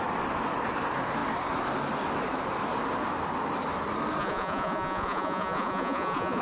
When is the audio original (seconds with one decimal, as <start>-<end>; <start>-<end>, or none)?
0.0-4.2